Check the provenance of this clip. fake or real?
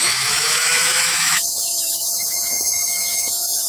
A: fake